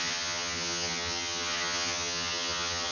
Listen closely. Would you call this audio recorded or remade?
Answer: remade